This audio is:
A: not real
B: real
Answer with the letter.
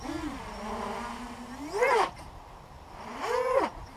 B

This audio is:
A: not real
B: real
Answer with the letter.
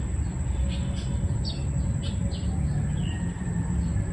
B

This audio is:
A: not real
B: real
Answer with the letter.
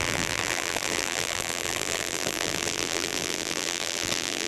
A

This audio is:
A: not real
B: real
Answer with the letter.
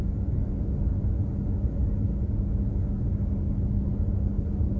B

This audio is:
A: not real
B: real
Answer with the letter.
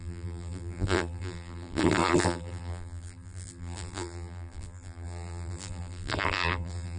A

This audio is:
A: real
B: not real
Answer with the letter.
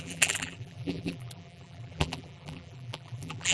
B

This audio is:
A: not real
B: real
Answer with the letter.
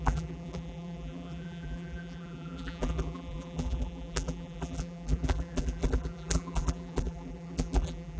A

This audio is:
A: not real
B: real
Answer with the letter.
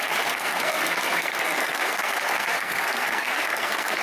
A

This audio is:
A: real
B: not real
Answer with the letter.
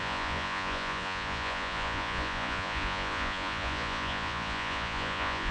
B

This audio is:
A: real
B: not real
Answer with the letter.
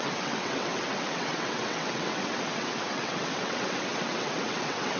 B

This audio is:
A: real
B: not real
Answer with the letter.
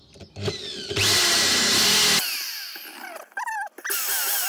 A